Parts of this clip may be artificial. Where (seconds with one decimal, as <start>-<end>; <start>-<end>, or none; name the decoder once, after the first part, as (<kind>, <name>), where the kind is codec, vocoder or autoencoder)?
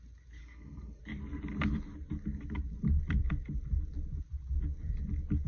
0.4-1.0 (codec, SNAC)